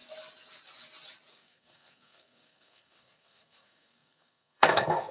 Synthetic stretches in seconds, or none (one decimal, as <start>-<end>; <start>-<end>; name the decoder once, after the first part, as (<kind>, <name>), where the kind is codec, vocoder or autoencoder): 1.3-5.1 (codec, SNAC)